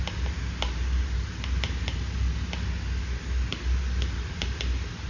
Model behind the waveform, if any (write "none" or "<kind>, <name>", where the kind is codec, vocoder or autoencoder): none